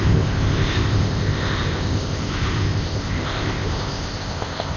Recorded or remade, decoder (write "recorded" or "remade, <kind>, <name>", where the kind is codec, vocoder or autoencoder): remade, codec, ZipCodec